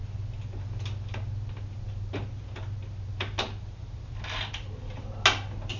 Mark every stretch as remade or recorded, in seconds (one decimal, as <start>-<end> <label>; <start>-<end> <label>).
0.0-5.8 recorded

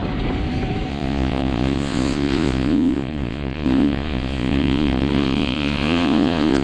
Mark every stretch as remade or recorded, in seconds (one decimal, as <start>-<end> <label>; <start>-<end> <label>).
0.0-0.9 recorded; 0.9-6.6 remade

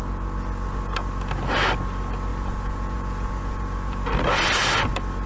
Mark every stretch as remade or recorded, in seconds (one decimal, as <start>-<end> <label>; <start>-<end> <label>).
0.0-2.3 recorded; 2.3-4.1 remade; 4.1-5.3 recorded

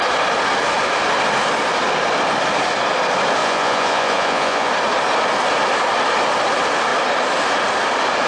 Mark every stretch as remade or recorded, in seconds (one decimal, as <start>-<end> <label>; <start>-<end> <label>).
0.0-3.4 recorded; 3.4-4.7 remade; 4.7-8.3 recorded

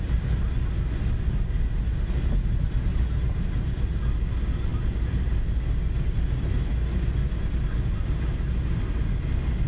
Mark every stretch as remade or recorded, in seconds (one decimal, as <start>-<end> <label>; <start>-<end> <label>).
0.0-9.7 recorded

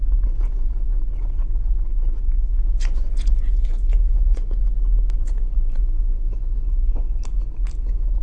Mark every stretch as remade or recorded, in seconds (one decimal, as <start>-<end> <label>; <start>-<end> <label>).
0.0-4.6 remade; 4.6-5.2 recorded; 5.2-7.2 remade; 7.2-8.2 recorded